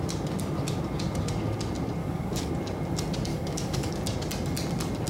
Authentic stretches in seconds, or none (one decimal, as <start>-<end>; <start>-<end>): 0.0-2.0; 2.5-3.3; 3.9-5.1